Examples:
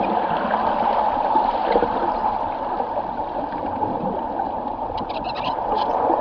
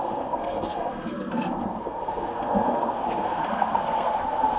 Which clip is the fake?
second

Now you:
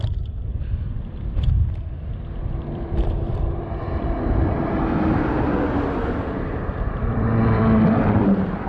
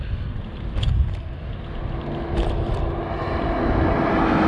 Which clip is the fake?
first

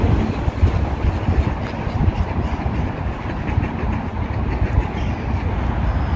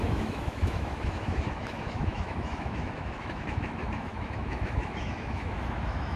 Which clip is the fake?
second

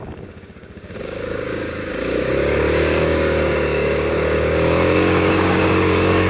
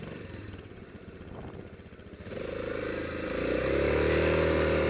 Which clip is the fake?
first